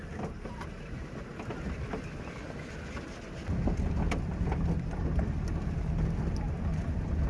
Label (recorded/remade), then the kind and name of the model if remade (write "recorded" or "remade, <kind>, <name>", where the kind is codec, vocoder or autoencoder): recorded